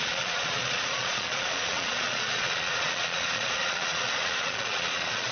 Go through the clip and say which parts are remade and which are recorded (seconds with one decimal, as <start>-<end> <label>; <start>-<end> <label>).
0.0-5.3 remade